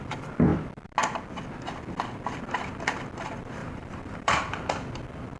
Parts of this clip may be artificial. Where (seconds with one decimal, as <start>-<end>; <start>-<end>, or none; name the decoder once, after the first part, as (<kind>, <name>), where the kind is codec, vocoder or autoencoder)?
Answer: 3.6-4.6 (vocoder, BigVGAN v2)